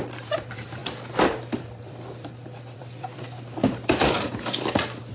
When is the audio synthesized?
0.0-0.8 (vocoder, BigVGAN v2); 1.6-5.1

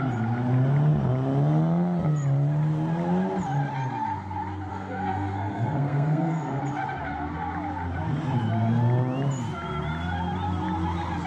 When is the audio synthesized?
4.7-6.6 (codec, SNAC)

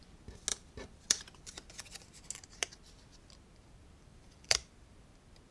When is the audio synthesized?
0.5-1.2 (vocoder, BigVGAN v2); 4.1-4.7